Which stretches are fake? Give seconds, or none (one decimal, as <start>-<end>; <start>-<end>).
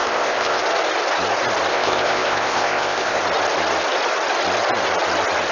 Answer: 0.0-0.6; 1.7-3.2